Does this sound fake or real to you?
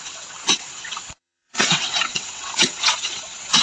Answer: fake